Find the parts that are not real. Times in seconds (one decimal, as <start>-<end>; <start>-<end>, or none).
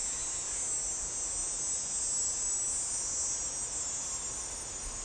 none